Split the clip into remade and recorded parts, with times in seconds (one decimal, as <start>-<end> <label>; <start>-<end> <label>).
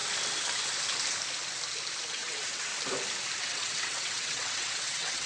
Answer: 0.0-2.1 recorded; 2.1-2.7 remade; 2.7-3.4 recorded; 3.4-5.3 remade